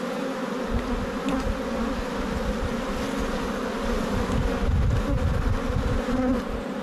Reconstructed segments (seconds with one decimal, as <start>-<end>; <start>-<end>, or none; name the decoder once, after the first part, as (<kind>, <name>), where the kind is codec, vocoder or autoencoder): none